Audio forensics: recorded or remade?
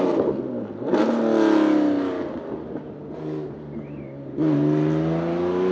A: recorded